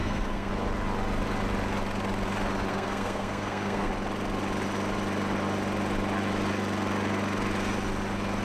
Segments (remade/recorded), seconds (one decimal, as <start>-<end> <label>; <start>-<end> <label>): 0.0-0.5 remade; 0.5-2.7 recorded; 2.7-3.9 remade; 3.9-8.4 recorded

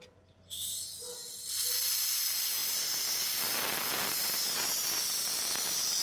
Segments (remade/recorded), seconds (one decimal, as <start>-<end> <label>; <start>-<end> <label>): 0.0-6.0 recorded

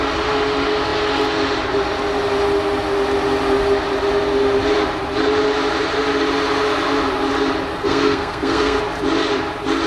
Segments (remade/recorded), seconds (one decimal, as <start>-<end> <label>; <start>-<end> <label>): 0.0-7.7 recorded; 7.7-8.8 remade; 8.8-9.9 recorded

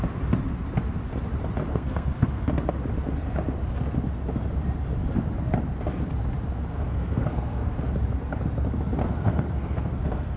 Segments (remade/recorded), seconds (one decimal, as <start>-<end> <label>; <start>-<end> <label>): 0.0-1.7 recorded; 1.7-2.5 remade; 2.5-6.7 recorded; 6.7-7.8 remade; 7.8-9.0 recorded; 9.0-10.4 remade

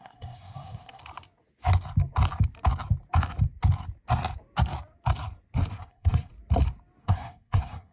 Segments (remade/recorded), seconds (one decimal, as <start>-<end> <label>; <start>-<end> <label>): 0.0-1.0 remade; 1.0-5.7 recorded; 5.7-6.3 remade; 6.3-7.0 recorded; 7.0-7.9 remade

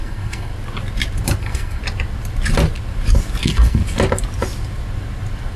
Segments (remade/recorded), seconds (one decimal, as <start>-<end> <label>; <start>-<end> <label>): 0.0-0.5 remade; 0.5-1.4 recorded; 1.4-1.8 remade; 1.8-3.4 recorded; 3.4-3.8 remade; 3.8-5.6 recorded

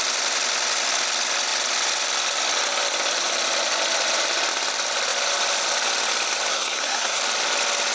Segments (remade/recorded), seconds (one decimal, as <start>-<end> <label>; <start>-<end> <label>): 0.0-6.5 recorded; 6.5-7.2 remade; 7.2-7.9 recorded